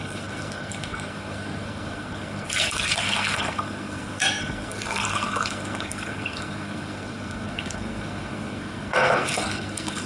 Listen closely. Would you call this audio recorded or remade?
remade